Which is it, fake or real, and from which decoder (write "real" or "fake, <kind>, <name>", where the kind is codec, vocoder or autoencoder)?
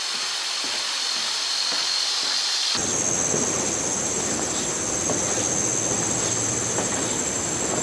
real